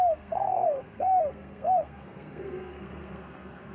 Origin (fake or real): fake